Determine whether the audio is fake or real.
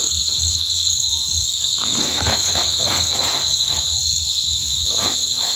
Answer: fake